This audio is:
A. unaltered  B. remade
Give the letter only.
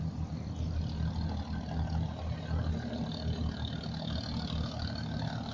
A